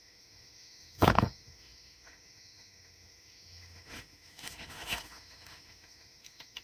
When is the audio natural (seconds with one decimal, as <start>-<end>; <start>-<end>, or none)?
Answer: none